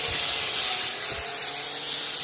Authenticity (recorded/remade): recorded